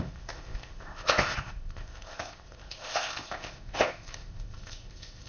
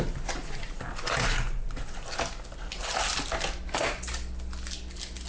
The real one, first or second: second